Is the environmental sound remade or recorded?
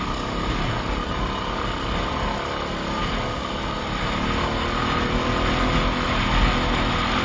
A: recorded